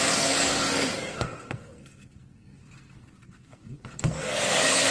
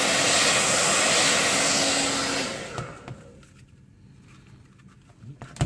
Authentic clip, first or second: second